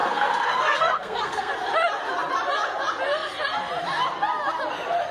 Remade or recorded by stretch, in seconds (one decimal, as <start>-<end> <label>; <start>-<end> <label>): 0.0-1.5 remade; 1.5-5.1 recorded